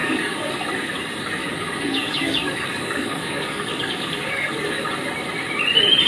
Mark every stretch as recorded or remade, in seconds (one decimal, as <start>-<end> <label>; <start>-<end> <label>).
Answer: 0.0-0.5 remade; 0.5-1.4 recorded; 1.4-4.9 remade; 4.9-6.1 recorded